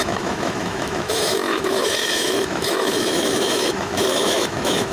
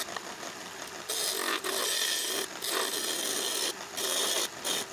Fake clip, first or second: first